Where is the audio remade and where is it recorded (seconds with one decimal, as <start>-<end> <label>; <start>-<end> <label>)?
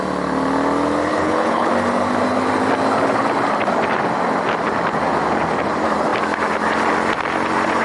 0.0-1.1 recorded; 1.1-1.7 remade; 1.7-7.8 recorded